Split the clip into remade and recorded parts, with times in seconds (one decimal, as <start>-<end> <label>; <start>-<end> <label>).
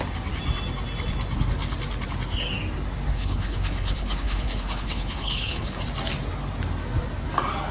0.0-3.1 recorded; 3.1-5.8 remade; 5.8-7.7 recorded